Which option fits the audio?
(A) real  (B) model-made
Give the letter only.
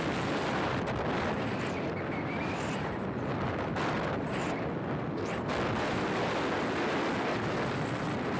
A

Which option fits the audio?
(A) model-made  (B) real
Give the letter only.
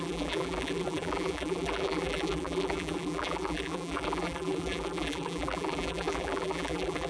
A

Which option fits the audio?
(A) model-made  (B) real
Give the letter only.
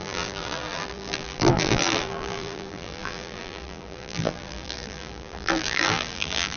A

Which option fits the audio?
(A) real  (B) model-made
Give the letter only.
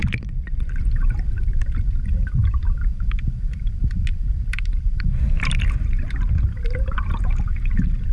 B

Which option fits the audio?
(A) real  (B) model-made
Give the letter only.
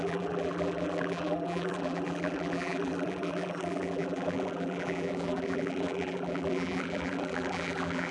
B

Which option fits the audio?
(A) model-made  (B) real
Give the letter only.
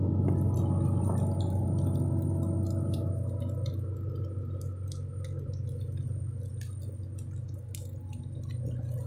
B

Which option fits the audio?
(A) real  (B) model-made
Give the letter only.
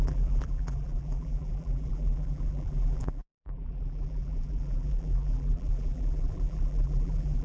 B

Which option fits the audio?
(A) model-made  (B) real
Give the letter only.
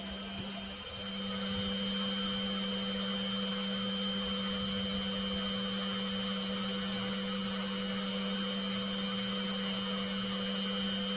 B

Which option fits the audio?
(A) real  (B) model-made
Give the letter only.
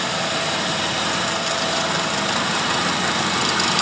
B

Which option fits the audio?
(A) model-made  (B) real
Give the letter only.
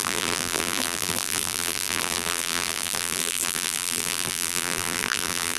A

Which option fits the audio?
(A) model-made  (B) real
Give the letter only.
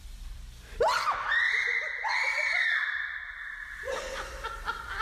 A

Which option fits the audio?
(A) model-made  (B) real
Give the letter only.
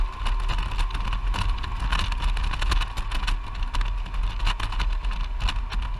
B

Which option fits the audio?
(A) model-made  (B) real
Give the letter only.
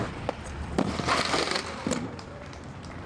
A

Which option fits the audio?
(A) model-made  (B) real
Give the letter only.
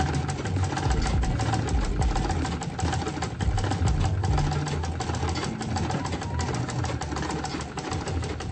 B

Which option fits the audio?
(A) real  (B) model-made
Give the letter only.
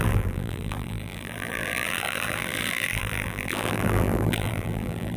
B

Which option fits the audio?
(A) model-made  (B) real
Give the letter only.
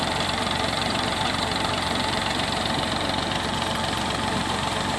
A